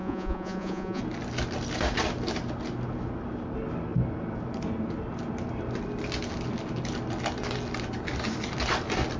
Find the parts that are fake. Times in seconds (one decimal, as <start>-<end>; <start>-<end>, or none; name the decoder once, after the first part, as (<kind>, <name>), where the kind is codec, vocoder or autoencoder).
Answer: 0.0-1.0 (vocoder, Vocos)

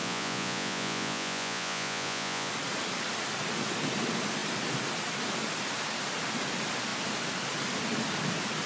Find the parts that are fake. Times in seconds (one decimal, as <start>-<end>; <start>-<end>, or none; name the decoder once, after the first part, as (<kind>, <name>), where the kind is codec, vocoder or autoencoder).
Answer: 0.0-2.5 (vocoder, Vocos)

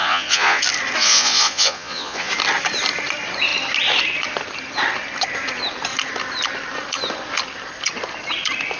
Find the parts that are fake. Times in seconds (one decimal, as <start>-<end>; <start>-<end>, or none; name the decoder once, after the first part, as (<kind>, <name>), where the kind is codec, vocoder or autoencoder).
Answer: 0.0-0.6 (vocoder, Vocos); 1.0-2.3